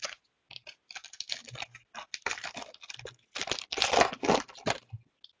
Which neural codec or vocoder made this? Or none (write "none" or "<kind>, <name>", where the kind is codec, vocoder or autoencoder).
none